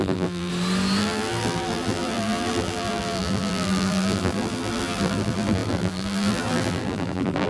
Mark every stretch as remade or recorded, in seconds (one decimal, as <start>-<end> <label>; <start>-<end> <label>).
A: 0.0-0.5 remade; 0.5-1.0 recorded; 1.0-7.5 remade